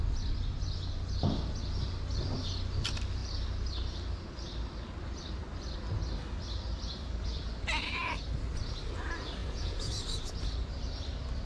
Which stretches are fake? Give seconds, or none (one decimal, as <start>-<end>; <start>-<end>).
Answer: 9.4-9.9

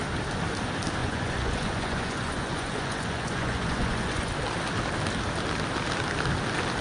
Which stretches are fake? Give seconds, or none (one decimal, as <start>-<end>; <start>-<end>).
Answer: 1.0-4.3

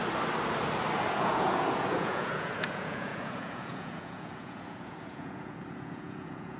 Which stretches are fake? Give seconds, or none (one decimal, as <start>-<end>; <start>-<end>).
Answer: 1.0-6.6

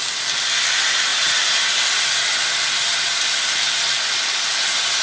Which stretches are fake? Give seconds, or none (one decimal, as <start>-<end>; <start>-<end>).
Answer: none

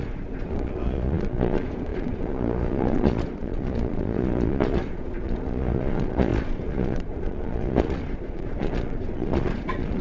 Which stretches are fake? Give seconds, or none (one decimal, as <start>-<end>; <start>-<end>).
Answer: 0.0-10.0

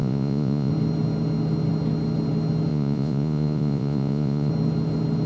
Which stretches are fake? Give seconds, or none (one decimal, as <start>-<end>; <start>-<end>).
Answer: 0.0-0.7; 2.7-4.5

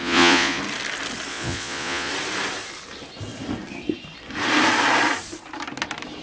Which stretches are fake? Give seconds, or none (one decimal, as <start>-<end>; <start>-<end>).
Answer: 0.0-0.6; 1.3-2.1